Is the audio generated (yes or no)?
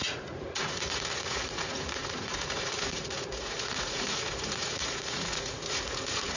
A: yes